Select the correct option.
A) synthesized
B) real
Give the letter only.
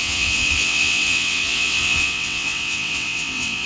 A